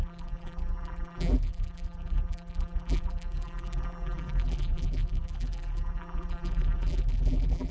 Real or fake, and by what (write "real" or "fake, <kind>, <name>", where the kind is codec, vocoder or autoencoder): fake, vocoder, BigVGAN v2